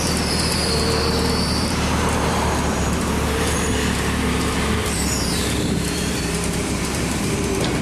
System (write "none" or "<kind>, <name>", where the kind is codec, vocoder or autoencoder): vocoder, BigVGAN v2